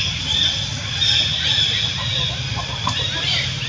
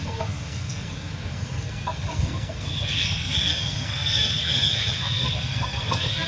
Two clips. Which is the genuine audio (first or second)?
first